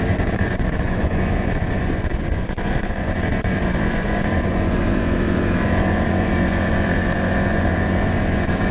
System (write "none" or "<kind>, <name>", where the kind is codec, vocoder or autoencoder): vocoder, Vocos